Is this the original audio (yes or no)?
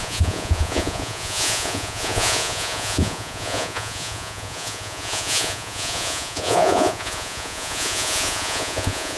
no